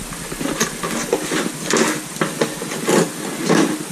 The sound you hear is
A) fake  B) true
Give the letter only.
B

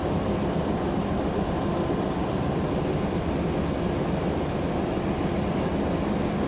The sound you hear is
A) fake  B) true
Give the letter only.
B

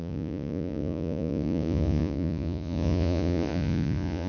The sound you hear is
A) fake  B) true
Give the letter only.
A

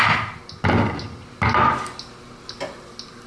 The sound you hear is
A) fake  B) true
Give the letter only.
B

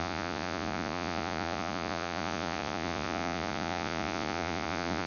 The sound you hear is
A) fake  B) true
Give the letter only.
A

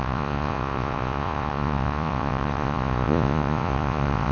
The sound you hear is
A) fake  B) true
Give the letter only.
A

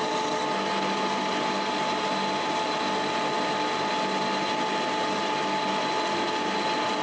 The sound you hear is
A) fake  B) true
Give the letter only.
B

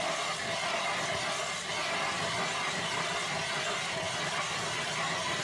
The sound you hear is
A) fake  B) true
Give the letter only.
B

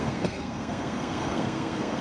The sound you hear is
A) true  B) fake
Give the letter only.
B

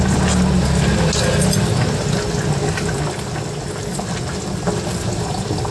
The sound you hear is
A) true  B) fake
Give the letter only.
A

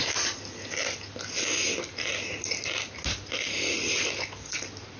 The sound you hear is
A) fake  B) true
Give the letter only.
B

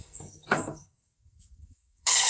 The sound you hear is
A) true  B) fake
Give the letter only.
B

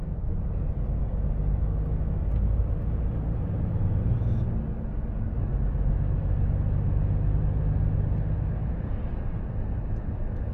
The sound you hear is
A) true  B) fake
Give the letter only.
A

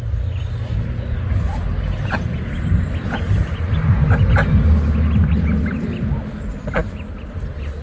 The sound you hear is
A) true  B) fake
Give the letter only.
A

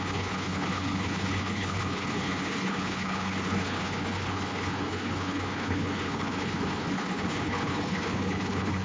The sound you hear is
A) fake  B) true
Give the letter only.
A